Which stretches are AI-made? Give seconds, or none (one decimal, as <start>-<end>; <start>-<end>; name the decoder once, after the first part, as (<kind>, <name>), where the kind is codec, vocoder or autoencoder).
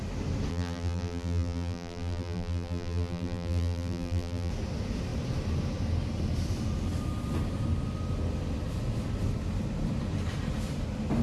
0.5-4.5 (vocoder, BigVGAN v2)